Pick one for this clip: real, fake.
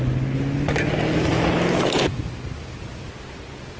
real